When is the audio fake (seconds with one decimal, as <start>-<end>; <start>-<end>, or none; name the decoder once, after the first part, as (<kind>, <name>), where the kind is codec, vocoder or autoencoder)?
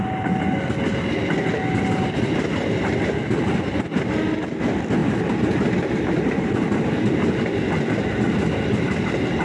none